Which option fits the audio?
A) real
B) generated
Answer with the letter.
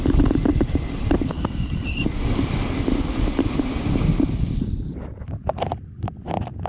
A